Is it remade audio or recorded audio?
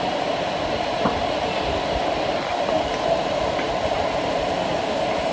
recorded